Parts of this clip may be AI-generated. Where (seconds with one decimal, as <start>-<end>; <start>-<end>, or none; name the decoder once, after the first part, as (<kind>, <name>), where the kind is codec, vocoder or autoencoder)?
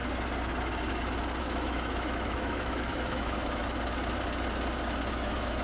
1.4-3.6 (autoencoder, DAC-VAE); 5.1-5.6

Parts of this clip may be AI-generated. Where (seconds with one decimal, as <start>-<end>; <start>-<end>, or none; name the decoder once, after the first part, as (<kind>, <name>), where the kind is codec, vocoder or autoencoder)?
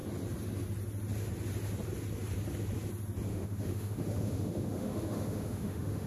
3.3-6.1 (autoencoder, DAC-VAE)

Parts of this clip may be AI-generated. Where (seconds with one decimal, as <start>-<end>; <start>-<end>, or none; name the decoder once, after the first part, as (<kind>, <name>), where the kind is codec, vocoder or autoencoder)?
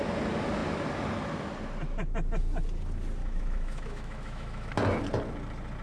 3.2-4.7 (autoencoder, DAC-VAE)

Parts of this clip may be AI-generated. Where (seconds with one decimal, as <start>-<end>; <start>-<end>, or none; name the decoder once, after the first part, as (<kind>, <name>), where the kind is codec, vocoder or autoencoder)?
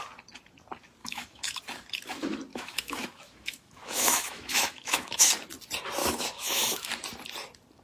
1.0-1.6 (autoencoder, DAC-VAE); 2.5-5.3; 6.0-6.9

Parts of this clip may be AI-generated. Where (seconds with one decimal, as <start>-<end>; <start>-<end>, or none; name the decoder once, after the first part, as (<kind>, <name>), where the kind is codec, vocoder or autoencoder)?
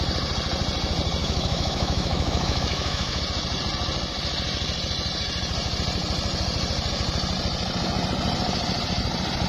1.2-3.2 (autoencoder, DAC-VAE)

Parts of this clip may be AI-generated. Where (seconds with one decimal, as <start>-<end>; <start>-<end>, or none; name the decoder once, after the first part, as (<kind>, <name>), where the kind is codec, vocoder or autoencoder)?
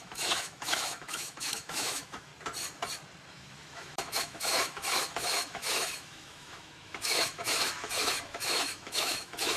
0.0-2.3 (autoencoder, DAC-VAE); 3.3-9.6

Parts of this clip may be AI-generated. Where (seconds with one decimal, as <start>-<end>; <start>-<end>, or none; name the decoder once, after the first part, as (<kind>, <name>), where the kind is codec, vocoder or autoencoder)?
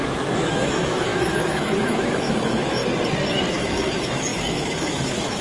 0.0-2.8 (autoencoder, DAC-VAE); 3.5-5.4